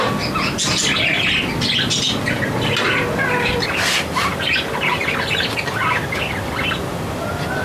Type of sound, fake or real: real